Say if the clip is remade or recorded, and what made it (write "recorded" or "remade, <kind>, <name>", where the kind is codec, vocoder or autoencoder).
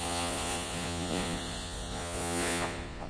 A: remade, vocoder, Vocos